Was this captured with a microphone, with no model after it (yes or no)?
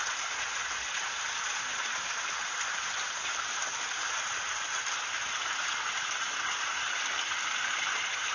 yes